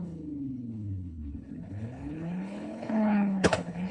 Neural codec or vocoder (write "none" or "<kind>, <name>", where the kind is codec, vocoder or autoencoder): codec, HILCodec